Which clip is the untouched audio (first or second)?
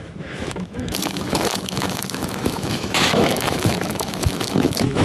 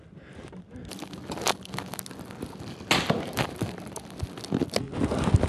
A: second